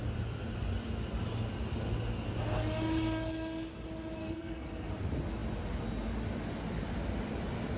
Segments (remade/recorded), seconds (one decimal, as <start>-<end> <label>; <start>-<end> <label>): 0.0-4.2 recorded; 4.2-4.9 remade; 4.9-7.8 recorded